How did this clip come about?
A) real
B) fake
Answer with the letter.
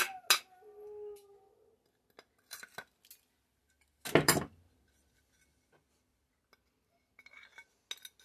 A